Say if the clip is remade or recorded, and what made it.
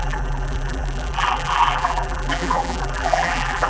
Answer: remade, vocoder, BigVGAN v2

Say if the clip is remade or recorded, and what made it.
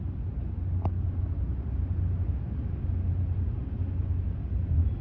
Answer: recorded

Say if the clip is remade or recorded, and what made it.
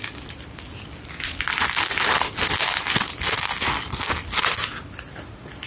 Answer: recorded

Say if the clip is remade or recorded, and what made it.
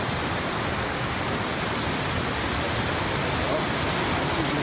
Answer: recorded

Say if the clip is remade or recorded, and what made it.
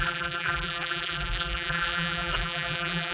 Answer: remade, vocoder, BigVGAN v2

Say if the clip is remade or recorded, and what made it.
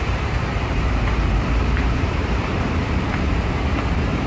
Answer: remade, vocoder, BigVGAN v2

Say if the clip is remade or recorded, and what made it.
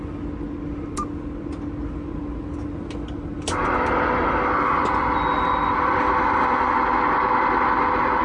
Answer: recorded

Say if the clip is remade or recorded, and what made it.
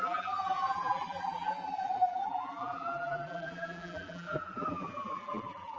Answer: remade, vocoder, BigVGAN v2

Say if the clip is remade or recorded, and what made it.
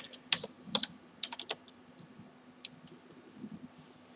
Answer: recorded